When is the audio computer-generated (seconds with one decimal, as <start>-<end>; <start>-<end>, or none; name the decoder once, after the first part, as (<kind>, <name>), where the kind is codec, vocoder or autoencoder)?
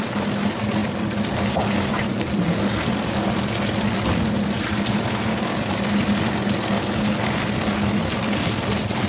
none